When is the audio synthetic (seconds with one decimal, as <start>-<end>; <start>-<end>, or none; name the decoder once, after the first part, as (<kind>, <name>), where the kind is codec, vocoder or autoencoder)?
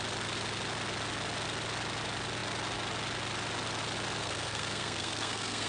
4.2-5.7 (codec, SNAC)